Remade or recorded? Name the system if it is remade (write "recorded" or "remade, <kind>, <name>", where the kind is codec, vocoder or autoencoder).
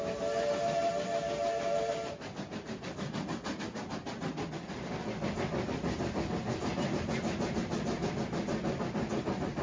recorded